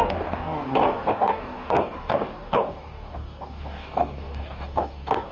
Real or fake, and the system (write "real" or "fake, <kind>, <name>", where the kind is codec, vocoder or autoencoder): fake, codec, DAC